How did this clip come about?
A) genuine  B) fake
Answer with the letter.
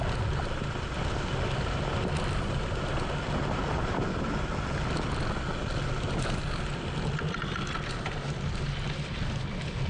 A